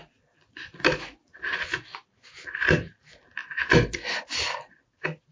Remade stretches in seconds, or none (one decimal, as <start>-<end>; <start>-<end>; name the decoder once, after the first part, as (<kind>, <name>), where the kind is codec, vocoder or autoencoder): 0.0-3.0 (vocoder, BigVGAN v2)